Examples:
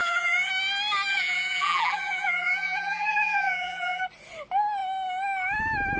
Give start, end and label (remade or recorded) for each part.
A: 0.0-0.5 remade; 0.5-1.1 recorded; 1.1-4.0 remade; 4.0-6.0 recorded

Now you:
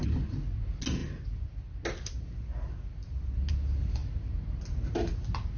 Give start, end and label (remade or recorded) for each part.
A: 0.0-5.6 recorded

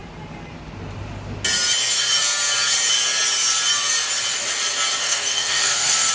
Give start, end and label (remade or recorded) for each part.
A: 0.0-5.0 recorded; 5.0-6.1 remade

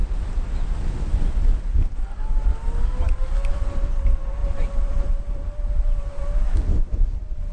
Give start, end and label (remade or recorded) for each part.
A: 0.0-3.5 recorded; 3.5-7.5 remade

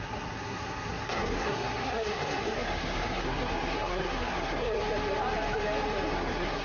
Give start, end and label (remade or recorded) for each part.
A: 0.0-4.8 remade; 4.8-6.1 recorded; 6.1-6.6 remade